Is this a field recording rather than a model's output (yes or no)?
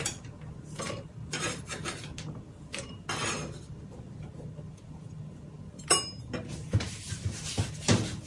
yes